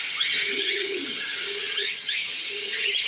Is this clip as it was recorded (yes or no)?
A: no